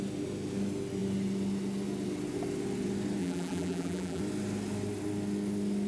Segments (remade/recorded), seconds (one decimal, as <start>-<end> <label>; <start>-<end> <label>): 0.0-3.2 recorded; 3.2-4.2 remade; 4.2-5.9 recorded